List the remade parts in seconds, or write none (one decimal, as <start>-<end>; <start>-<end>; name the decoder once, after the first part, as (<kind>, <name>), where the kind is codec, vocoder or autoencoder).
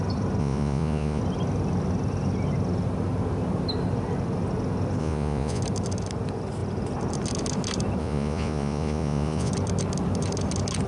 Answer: 0.4-1.2 (vocoder, Vocos); 5.0-5.6; 8.0-9.5